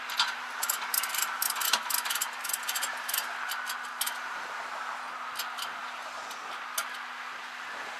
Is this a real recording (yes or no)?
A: yes